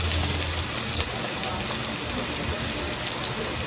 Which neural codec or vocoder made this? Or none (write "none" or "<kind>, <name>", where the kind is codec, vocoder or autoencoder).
none